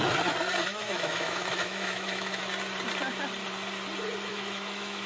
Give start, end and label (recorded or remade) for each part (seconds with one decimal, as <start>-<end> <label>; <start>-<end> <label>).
0.0-0.6 recorded; 0.6-2.4 remade; 2.4-4.3 recorded; 4.3-5.1 remade